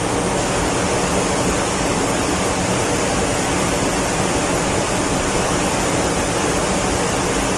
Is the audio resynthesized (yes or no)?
no